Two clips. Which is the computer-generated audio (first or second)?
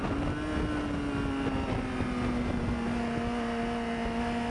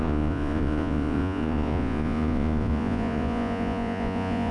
second